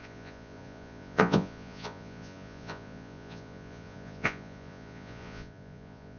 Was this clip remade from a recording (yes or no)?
yes